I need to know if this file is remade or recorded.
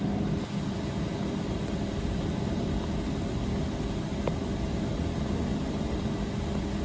recorded